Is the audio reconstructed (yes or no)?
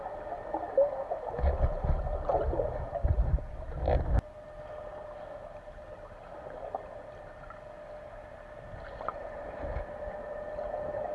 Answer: no